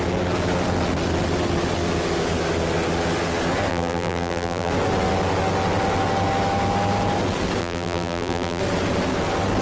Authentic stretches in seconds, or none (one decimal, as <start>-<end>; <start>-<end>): 0.0-3.7; 4.7-7.6; 8.6-9.6